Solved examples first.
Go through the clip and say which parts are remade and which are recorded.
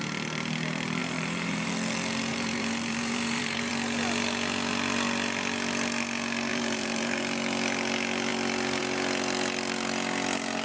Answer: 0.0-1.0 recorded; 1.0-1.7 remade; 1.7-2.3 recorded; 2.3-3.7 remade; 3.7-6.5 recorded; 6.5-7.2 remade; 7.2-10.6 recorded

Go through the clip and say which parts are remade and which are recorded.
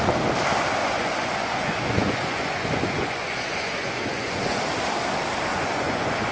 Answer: 0.0-0.8 recorded; 0.8-4.6 remade; 4.6-5.5 recorded; 5.5-6.3 remade